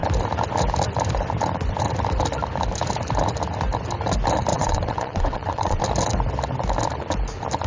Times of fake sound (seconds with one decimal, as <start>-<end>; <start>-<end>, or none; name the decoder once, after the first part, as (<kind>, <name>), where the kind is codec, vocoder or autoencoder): 4.5-5.8 (vocoder, WaveNeXt)